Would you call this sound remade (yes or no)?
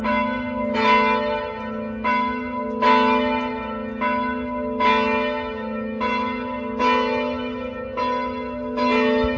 no